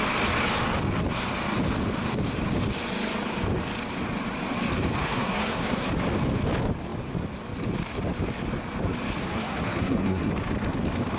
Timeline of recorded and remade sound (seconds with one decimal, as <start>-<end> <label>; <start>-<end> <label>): 0.0-5.0 recorded; 5.0-5.9 remade; 5.9-9.2 recorded; 9.2-10.3 remade; 10.3-11.2 recorded